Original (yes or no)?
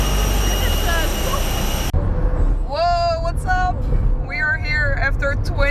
yes